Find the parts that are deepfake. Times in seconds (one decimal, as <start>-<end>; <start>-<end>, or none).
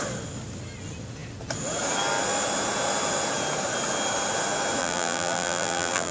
4.8-6.1